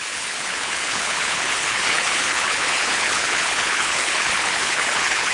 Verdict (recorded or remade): remade